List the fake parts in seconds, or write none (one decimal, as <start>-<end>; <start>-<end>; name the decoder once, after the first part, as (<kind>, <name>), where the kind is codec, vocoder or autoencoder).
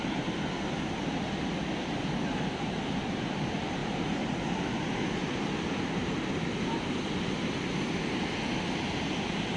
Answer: none